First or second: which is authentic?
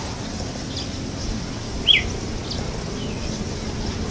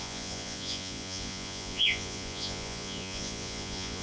first